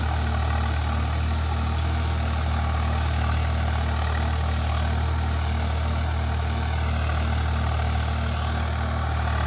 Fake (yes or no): no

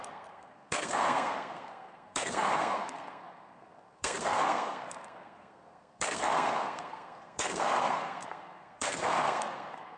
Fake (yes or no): yes